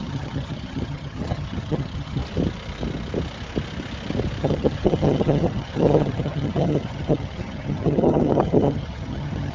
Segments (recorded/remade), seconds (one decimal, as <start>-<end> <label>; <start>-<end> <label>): 0.0-2.2 remade; 2.2-4.4 recorded; 4.4-9.5 remade